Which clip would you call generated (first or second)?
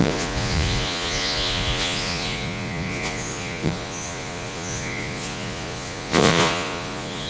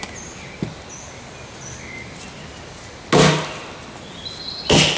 first